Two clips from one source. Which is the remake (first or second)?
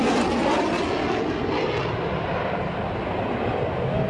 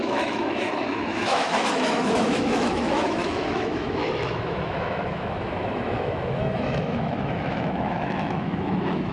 second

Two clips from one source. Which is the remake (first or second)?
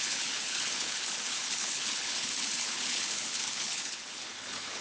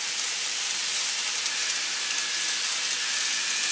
first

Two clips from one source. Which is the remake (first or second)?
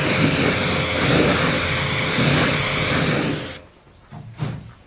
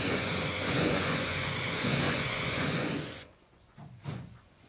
second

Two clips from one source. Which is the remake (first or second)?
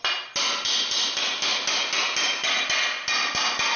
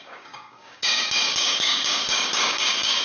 second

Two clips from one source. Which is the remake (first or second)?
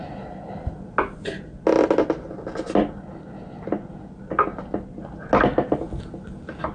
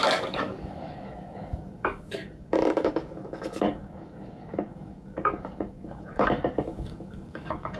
second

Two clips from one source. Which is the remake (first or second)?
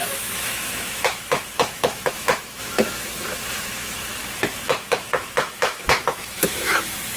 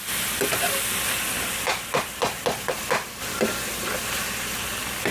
first